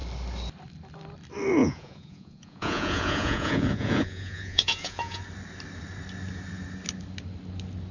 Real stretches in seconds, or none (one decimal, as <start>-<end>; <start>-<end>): 0.0-1.6; 5.2-7.9